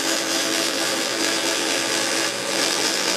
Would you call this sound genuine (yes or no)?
no